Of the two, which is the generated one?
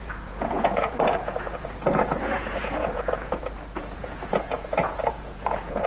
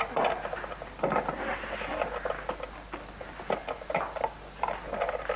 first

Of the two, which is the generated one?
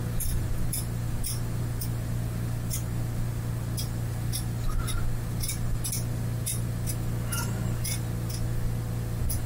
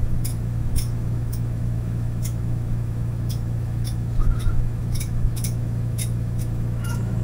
second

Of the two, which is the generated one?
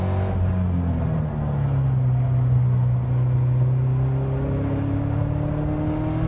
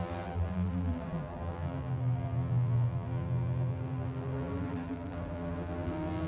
second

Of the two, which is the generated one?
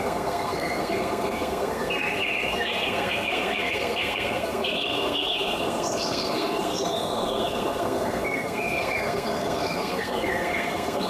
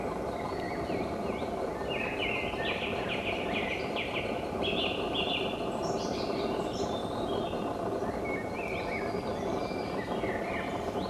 first